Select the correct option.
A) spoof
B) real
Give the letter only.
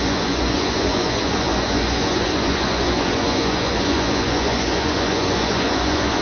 A